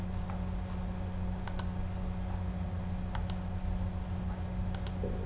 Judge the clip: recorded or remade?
recorded